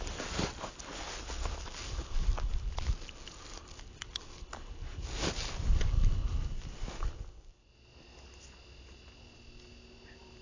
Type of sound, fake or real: real